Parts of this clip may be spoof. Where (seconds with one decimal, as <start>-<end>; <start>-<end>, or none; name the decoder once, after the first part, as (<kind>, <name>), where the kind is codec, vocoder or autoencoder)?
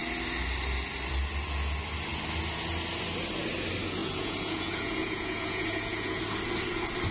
4.0-6.2 (vocoder, Vocos)